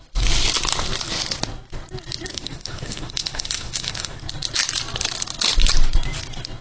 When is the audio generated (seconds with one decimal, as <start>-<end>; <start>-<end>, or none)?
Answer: 2.3-4.2